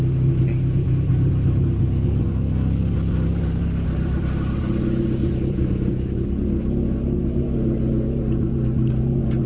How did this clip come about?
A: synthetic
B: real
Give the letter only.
B